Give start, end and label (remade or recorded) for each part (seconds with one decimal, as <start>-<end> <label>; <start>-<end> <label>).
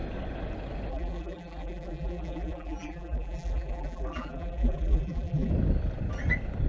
0.0-0.9 recorded; 0.9-5.5 remade; 5.5-6.7 recorded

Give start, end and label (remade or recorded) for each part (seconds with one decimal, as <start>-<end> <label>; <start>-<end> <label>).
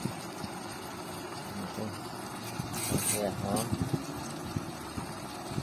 0.0-5.6 recorded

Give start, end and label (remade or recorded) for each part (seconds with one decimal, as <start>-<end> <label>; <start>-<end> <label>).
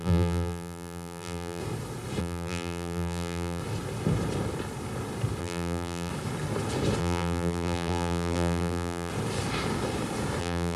0.0-1.6 remade; 1.6-2.2 recorded; 2.2-3.6 remade; 3.6-5.4 recorded; 5.4-6.1 remade; 6.1-7.0 recorded; 7.0-9.1 remade; 9.1-10.4 recorded; 10.4-10.8 remade